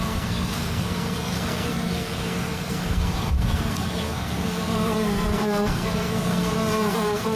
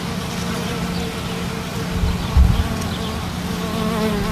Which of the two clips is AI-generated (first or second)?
first